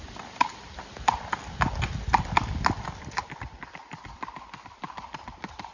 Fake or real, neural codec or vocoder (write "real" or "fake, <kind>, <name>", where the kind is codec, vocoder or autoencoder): fake, vocoder, BigVGAN v2